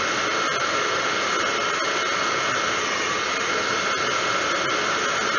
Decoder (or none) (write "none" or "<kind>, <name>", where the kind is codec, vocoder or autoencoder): none